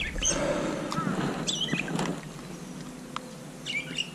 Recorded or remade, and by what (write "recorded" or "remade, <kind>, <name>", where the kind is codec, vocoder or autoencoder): recorded